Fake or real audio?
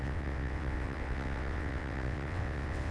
fake